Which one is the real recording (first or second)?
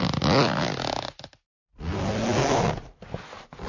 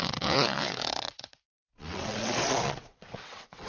first